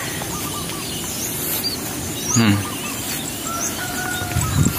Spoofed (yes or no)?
no